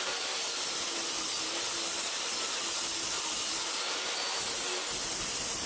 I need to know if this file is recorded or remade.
recorded